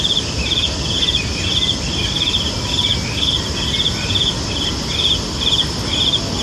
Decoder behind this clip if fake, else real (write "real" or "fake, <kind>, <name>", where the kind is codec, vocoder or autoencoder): real